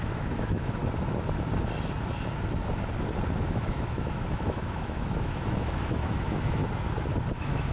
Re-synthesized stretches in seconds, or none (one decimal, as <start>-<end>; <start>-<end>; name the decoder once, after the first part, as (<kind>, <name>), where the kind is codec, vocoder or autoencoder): 0.0-0.8 (autoencoder, DAC-VAE); 3.4-6.6; 7.3-7.7